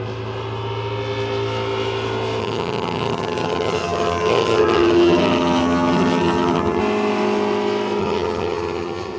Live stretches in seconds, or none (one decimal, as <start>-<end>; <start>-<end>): 0.0-2.4; 6.8-8.0